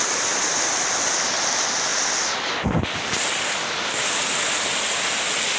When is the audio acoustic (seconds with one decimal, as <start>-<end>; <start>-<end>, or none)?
0.0-5.6